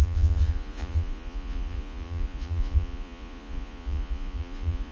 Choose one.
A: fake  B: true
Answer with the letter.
A